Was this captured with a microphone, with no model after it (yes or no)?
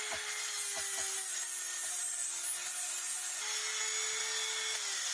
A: yes